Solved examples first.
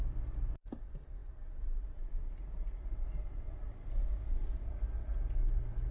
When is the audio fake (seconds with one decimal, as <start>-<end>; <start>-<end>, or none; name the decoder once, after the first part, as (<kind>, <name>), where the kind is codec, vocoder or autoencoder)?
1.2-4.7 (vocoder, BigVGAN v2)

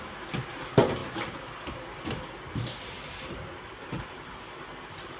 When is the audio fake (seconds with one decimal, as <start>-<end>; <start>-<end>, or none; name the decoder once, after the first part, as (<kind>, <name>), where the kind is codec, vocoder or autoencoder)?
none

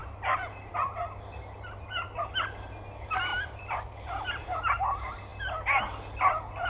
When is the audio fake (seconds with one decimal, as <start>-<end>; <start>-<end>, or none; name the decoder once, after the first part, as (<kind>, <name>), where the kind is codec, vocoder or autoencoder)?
3.3-4.6 (vocoder, BigVGAN v2)

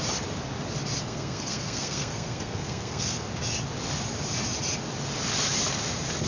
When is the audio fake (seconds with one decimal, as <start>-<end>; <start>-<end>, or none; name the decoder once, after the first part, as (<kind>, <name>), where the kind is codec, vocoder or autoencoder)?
1.0-3.3 (codec, SNAC)